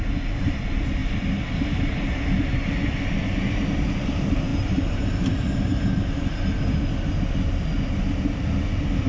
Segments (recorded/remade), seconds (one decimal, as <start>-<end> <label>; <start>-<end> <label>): 0.0-9.1 recorded